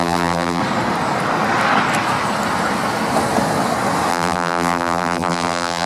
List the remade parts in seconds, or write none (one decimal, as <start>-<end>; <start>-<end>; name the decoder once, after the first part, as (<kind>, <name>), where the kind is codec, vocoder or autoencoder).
0.0-0.6 (vocoder, BigVGAN v2); 4.1-5.9